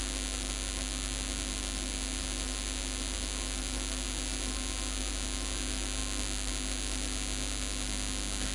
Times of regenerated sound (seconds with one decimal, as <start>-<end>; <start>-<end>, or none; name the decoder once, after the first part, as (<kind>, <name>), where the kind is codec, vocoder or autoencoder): none